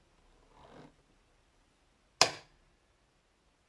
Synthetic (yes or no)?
no